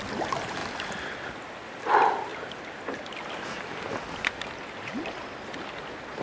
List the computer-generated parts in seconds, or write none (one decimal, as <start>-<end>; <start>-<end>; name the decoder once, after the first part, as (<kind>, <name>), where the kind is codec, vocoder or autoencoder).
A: 0.6-1.1 (vocoder, BigVGAN v2)